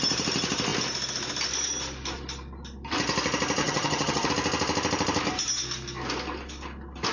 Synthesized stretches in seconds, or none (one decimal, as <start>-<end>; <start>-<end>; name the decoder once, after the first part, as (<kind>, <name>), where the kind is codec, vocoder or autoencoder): 3.6-4.3 (vocoder, HiFi-GAN)